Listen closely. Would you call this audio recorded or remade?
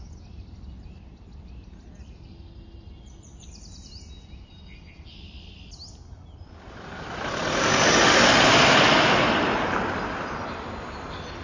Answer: recorded